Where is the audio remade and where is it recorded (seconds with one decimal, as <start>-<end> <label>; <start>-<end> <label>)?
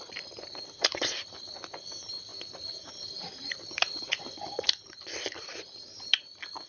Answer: 0.0-5.5 remade; 5.5-6.1 recorded; 6.1-6.7 remade